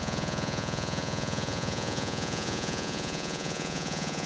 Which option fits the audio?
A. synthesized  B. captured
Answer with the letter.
A